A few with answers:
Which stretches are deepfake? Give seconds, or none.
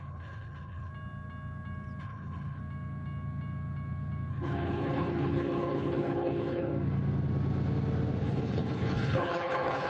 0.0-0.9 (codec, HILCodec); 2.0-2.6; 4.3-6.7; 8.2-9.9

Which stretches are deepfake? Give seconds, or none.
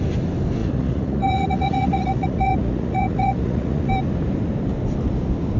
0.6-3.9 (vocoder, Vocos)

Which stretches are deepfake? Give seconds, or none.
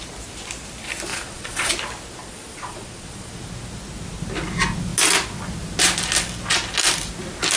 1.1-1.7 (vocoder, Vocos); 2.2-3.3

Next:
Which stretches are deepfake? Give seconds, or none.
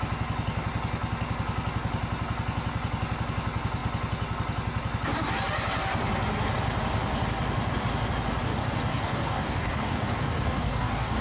8.5-11.2 (codec, DAC)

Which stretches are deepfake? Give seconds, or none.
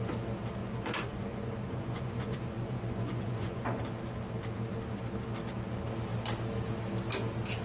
0.6-3.8 (vocoder, Vocos)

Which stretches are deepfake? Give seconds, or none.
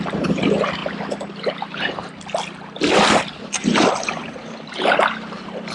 none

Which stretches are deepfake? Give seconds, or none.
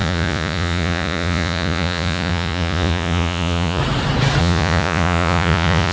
0.0-3.8 (vocoder, Vocos); 4.4-5.9